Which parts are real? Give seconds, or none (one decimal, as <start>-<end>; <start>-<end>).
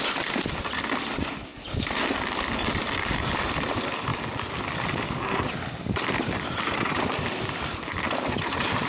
1.5-2.8; 4.1-5.9